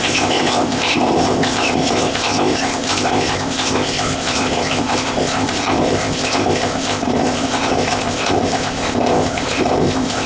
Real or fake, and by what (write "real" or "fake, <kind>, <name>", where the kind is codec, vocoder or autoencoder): fake, codec, ZipCodec